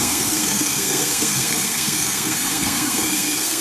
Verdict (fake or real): fake